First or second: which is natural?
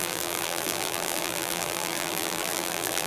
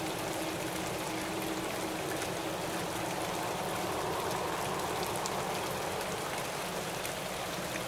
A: second